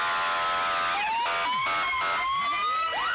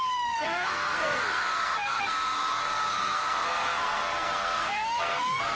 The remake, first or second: second